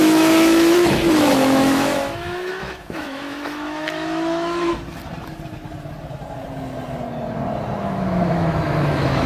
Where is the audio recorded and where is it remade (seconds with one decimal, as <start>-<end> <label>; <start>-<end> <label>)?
0.0-4.7 remade; 4.7-7.8 recorded; 7.8-9.3 remade